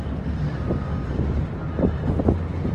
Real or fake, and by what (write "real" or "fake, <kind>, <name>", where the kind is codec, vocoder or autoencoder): real